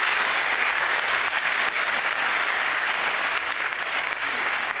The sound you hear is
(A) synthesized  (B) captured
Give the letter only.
A